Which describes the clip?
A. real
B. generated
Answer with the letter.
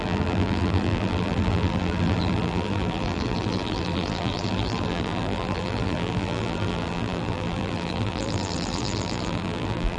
B